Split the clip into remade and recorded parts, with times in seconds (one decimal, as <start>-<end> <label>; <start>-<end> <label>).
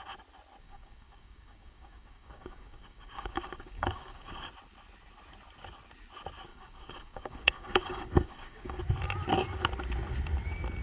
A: 0.0-0.6 recorded; 0.6-4.5 remade; 4.5-6.5 recorded; 6.5-8.8 remade; 8.8-10.8 recorded